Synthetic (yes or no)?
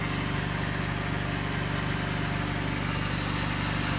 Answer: no